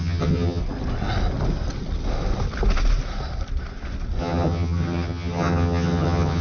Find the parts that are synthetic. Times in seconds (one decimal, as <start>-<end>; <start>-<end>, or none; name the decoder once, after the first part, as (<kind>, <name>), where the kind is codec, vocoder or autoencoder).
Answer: 0.0-0.6 (vocoder, HiFi-GAN); 4.2-6.4